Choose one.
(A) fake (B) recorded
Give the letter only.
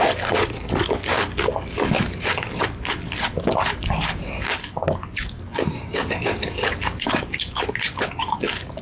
A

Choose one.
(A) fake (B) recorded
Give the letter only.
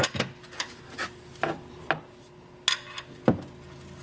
B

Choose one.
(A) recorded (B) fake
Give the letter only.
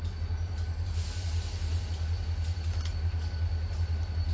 A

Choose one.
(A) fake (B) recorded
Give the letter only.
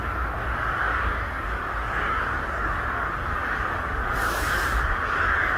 A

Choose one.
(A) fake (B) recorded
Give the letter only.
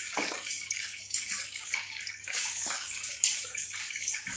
A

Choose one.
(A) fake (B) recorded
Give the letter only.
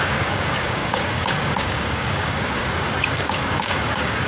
A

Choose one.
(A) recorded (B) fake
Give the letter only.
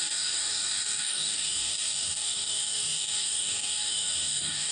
B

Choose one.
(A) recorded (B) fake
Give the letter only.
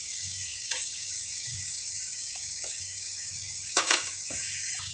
B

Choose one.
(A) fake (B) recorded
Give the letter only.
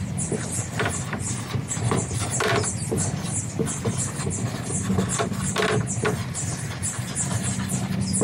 B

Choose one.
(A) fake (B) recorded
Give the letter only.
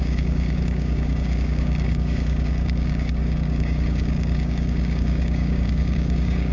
A